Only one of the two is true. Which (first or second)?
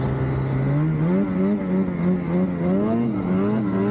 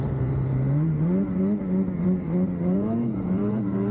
first